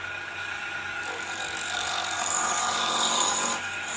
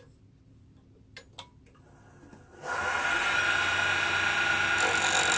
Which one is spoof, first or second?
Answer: first